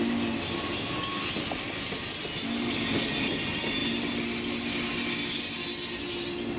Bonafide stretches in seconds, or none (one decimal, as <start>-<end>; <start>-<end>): 0.0-6.6